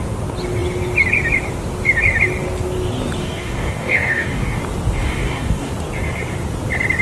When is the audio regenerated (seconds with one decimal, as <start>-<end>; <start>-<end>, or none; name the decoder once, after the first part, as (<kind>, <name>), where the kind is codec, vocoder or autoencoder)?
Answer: 3.2-4.6 (codec, DAC); 5.0-5.7